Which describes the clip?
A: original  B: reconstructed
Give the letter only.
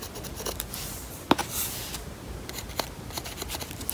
A